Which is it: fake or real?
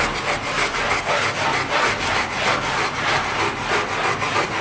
real